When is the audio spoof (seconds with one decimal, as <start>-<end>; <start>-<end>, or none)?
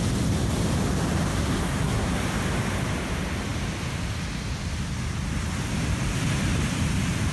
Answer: 1.3-2.2